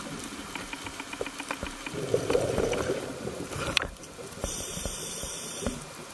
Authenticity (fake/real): fake